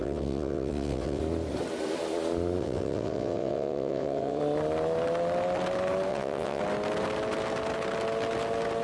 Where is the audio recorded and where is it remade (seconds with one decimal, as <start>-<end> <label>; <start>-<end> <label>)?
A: 0.0-1.2 remade; 1.2-2.6 recorded; 2.6-4.4 remade; 4.4-6.1 recorded; 6.1-6.6 remade; 6.6-8.8 recorded